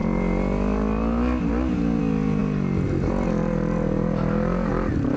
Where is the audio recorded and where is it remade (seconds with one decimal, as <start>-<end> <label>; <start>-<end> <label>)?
0.0-5.2 recorded